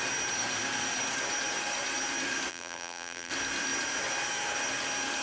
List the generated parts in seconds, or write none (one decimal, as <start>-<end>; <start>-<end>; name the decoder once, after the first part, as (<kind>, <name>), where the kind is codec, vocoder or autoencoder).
2.5-3.3 (vocoder, BigVGAN v2)